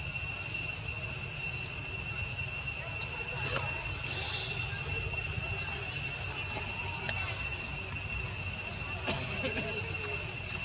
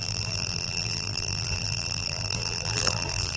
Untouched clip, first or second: first